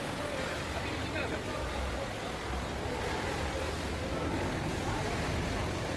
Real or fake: real